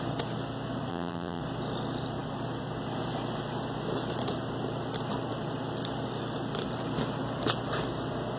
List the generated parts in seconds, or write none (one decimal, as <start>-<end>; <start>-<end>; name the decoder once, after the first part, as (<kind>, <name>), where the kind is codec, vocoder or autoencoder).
0.9-1.4 (vocoder, BigVGAN v2)